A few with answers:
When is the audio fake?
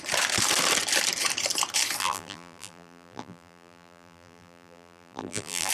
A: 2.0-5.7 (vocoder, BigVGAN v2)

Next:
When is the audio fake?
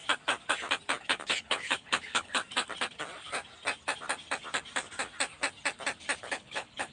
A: 1.0-2.4 (codec, HILCodec); 6.2-6.9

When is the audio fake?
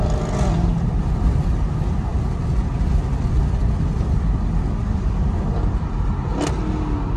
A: 2.1-4.4 (vocoder, BigVGAN v2)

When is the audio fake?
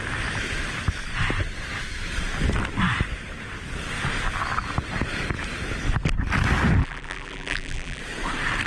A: 6.8-8.0 (vocoder, BigVGAN v2)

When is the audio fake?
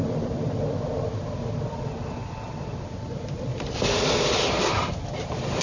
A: none